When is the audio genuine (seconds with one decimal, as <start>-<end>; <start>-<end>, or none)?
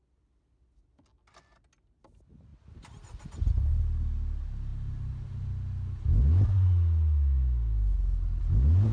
0.0-8.9